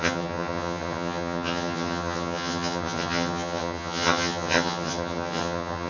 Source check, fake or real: fake